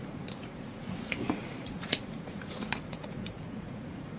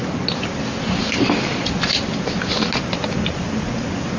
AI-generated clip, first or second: first